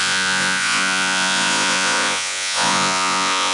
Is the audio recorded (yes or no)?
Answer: no